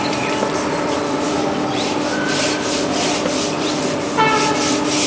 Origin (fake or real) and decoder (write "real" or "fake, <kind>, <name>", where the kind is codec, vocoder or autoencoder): real